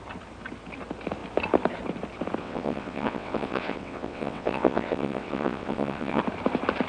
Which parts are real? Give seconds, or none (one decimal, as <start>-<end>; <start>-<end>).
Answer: 0.0-2.4; 6.2-6.9